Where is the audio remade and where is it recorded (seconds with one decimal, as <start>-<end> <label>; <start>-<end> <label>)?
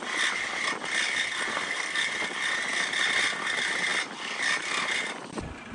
0.0-1.5 recorded; 1.5-2.0 remade; 2.0-5.7 recorded